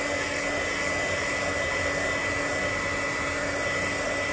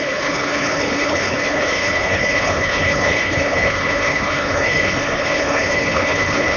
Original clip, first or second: first